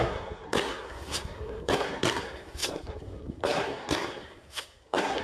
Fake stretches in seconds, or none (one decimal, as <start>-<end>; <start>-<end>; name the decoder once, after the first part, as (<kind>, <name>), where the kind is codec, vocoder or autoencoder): 0.0-5.2 (codec, SNAC)